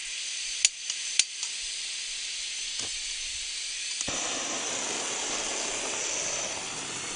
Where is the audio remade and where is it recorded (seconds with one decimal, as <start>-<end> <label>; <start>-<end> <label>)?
0.0-7.2 recorded